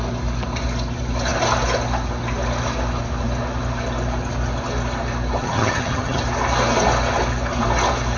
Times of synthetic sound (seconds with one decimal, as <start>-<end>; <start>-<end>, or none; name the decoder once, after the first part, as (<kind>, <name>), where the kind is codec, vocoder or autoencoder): 5.4-6.2 (vocoder, HiFi-GAN)